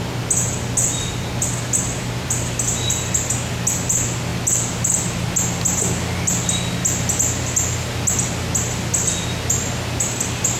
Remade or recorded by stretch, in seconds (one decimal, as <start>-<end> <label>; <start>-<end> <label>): 0.0-10.6 recorded